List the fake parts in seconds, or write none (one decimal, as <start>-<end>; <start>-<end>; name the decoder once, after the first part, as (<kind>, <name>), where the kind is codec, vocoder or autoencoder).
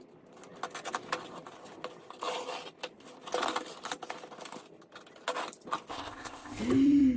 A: 5.9-6.6 (codec, ZipCodec)